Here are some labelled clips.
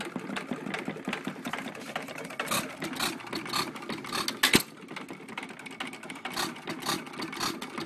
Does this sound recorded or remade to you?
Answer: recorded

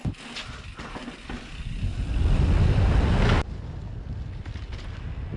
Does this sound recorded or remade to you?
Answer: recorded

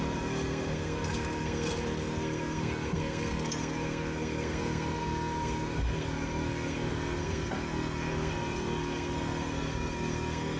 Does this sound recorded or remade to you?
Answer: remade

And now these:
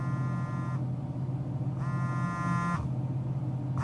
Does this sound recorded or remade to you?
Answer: recorded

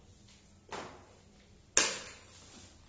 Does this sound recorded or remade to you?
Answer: recorded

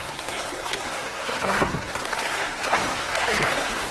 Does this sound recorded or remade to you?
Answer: remade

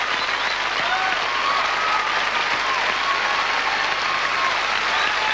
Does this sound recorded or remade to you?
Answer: recorded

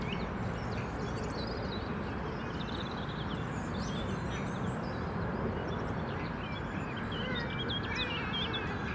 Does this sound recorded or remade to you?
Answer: recorded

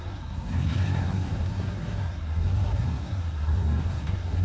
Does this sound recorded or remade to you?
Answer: remade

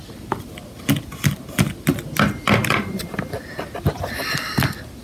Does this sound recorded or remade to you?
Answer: recorded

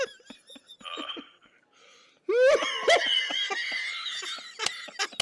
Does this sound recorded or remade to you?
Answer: recorded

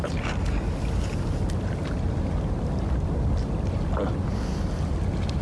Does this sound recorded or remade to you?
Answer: recorded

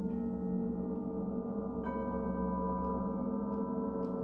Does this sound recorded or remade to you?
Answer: recorded